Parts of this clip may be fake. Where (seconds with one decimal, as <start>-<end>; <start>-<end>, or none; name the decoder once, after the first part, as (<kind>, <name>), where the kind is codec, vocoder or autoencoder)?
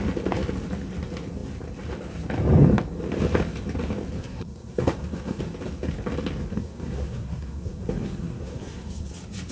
4.2-5.4 (codec, SNAC); 6.5-9.1